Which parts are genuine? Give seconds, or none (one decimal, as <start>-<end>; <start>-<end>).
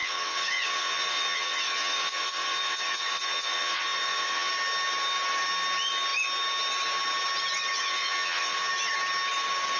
4.5-7.8; 8.7-9.8